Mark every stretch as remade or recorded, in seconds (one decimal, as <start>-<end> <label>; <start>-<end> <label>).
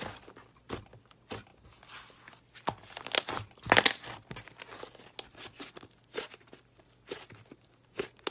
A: 0.0-8.3 recorded